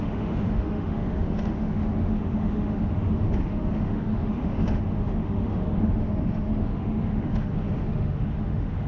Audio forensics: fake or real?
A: fake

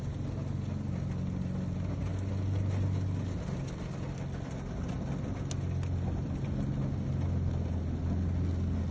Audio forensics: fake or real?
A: real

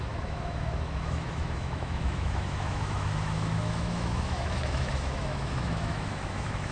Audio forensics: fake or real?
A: fake